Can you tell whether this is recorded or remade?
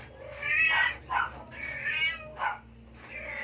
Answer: recorded